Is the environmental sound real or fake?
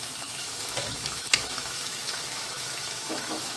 fake